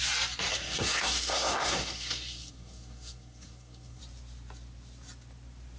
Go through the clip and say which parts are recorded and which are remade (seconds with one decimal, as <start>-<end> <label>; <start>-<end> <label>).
0.0-0.5 recorded; 0.5-4.0 remade; 4.0-5.8 recorded